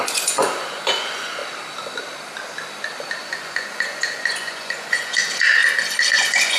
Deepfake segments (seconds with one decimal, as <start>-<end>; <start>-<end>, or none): 0.0-1.4; 3.2-5.6; 6.1-6.6